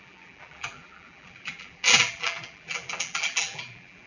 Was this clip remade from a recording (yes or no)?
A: yes